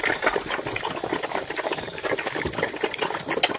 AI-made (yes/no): no